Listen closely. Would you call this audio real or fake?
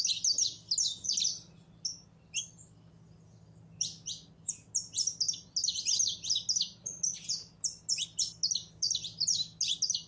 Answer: real